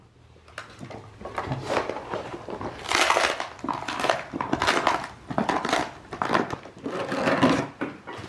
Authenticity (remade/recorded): recorded